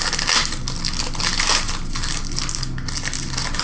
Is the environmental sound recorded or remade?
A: recorded